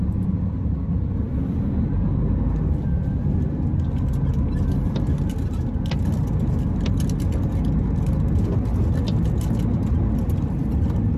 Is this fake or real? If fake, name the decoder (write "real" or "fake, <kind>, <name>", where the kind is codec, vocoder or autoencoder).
real